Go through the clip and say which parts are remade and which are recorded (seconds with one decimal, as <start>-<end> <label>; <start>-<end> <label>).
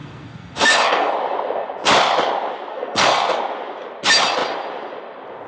0.0-1.1 remade; 1.1-2.7 recorded; 2.7-3.4 remade; 3.4-5.5 recorded